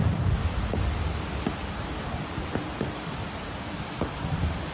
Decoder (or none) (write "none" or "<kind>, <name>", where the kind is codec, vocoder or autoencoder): none